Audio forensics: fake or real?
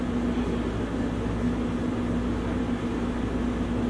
real